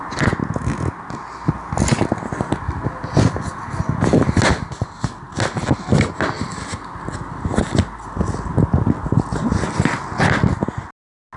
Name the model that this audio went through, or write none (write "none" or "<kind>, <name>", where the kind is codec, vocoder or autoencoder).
none